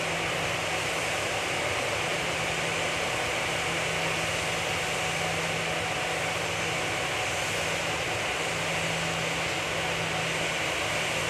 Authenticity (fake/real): real